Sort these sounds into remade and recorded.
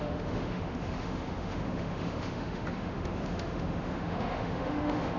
remade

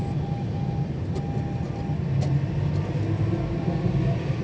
recorded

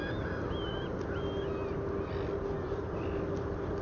recorded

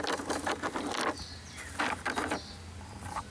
recorded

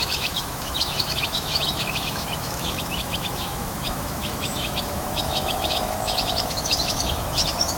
remade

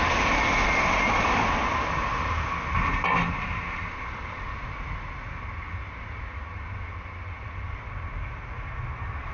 recorded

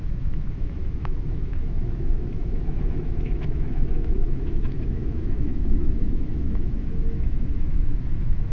remade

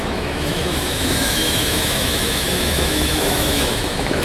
remade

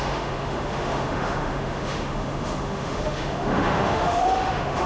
remade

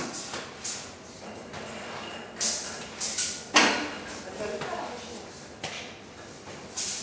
recorded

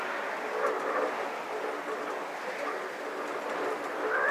recorded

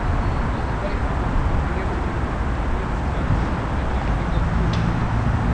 recorded